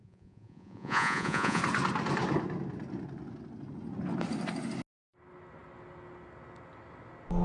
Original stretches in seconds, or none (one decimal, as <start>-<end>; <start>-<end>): 1.6-7.4